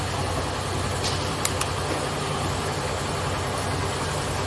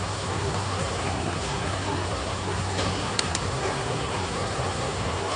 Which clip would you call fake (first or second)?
second